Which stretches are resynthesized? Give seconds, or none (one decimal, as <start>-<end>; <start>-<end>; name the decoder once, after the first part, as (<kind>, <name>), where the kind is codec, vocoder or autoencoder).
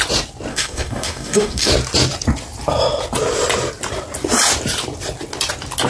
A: 0.5-1.7 (codec, DAC)